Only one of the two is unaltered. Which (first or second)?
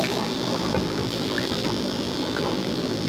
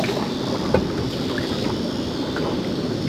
second